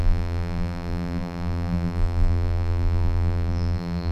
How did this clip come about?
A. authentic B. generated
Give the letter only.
B